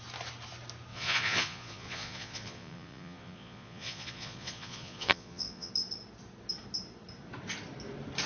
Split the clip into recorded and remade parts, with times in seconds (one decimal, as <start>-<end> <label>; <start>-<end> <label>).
0.0-0.9 recorded; 0.9-5.7 remade; 5.7-8.3 recorded